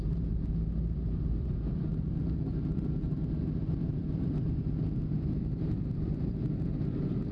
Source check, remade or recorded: remade